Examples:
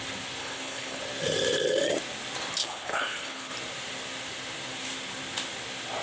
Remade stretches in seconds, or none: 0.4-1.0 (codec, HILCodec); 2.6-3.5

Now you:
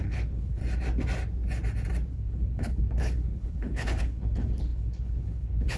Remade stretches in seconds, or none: 0.0-0.6 (codec, HILCodec); 2.1-5.8

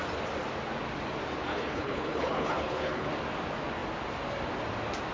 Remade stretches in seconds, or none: 1.5-3.1 (codec, HILCodec)

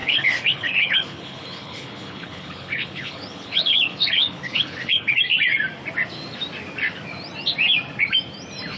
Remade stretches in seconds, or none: 0.0-5.2 (codec, HILCodec)